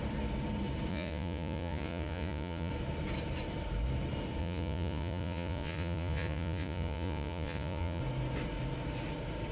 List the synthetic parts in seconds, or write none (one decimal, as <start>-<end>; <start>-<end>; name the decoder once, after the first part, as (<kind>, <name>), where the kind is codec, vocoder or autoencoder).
0.9-2.7 (vocoder, Vocos); 4.4-8.0

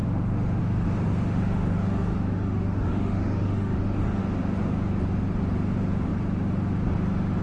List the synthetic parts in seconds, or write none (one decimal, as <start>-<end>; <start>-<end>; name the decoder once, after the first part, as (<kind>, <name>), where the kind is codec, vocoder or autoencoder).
0.0-0.6 (autoencoder, DAC-VAE); 1.1-4.2